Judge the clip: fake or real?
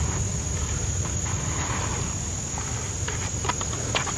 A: real